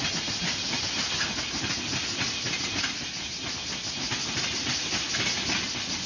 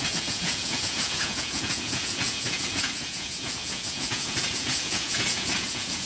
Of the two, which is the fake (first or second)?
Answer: second